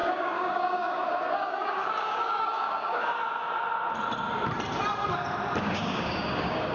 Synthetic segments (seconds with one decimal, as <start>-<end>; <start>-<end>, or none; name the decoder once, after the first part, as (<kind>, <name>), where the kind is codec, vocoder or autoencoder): 0.0-3.1 (codec, DAC); 5.6-6.7